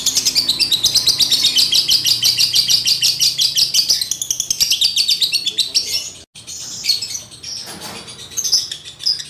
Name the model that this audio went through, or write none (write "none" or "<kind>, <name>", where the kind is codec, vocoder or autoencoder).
none